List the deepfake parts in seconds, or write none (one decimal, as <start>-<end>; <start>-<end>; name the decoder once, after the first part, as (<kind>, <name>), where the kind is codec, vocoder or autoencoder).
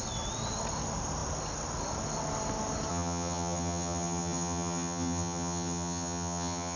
2.9-6.8 (vocoder, HiFi-GAN)